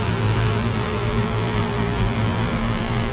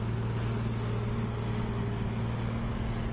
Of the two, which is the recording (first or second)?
second